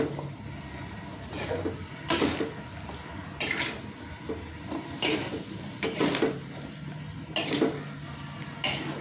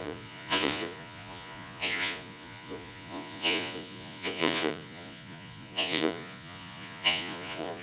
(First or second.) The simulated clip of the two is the second